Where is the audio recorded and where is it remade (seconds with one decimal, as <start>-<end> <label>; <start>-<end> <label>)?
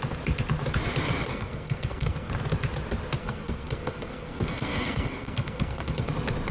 0.0-1.3 recorded; 1.3-2.3 remade; 2.3-3.2 recorded; 3.2-6.1 remade; 6.1-6.5 recorded